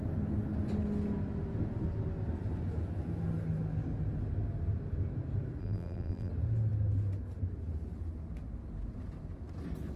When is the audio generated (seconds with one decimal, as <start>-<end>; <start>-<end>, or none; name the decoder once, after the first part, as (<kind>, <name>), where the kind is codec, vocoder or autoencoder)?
5.6-6.3 (vocoder, BigVGAN v2)